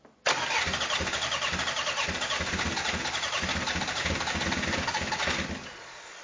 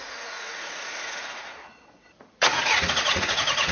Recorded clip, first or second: first